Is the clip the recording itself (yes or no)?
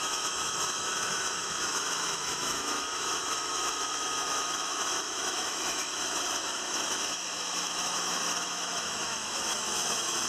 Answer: no